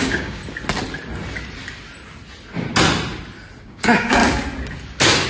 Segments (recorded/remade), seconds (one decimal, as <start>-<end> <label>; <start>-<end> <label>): 0.0-0.4 remade; 0.4-3.6 recorded; 3.6-4.2 remade; 4.2-5.3 recorded